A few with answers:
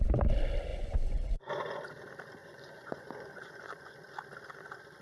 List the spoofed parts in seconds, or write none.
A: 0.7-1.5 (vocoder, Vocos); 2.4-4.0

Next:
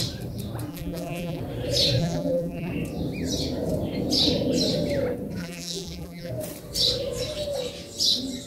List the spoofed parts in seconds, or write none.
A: 0.7-1.4 (vocoder, BigVGAN v2); 2.0-2.7; 5.4-6.3

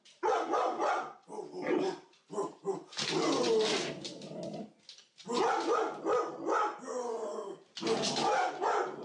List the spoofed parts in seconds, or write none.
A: none

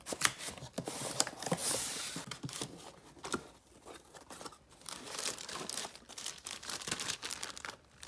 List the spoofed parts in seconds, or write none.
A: 0.0-1.6 (vocoder, BigVGAN v2); 3.2-8.1

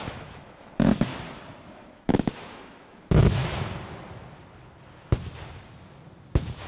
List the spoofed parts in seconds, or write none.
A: 0.0-1.1 (autoencoder, DAC-VAE); 1.7-3.4

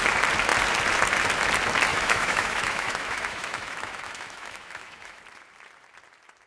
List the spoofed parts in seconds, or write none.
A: 1.9-5.2 (autoencoder, DAC-VAE)